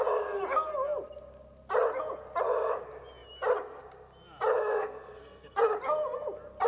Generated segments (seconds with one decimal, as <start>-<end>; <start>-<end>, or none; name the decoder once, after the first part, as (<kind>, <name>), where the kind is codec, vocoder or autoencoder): 4.7-5.6 (codec, SNAC)